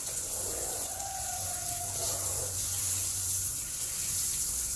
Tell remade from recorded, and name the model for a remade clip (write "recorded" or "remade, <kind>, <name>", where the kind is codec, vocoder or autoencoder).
remade, vocoder, Vocos